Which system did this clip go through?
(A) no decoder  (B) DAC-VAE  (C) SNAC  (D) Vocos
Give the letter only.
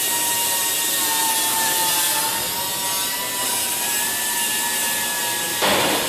A